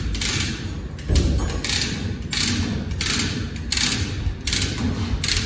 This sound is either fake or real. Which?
real